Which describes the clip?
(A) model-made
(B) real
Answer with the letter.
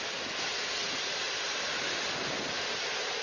B